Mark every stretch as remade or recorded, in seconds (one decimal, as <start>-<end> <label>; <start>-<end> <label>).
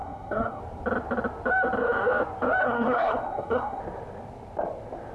0.0-0.6 remade; 0.6-2.6 recorded; 2.6-3.8 remade; 3.8-5.1 recorded